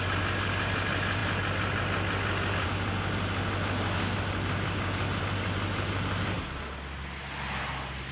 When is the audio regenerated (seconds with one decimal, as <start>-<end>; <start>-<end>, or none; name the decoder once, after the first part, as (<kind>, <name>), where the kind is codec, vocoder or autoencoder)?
none